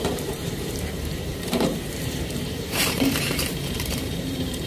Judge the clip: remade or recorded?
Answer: remade